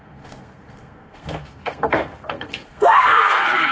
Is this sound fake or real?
fake